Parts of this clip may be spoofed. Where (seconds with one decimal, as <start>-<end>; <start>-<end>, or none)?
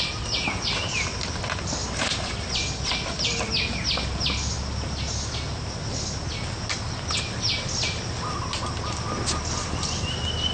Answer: none